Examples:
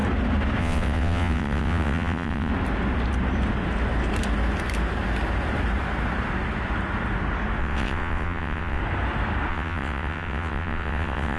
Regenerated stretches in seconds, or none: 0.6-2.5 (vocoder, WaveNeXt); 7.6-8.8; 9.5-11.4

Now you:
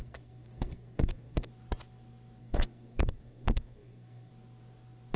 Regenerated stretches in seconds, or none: 0.0-1.5 (codec, SNAC); 2.4-4.3

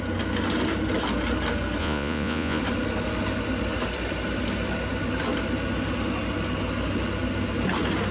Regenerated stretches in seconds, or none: 1.8-2.6 (vocoder, Vocos)